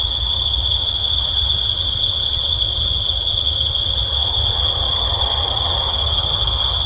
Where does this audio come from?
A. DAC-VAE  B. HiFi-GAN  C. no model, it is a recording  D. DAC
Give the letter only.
B